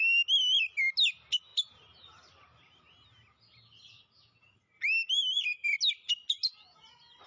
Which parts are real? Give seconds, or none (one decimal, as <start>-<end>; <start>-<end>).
0.0-7.3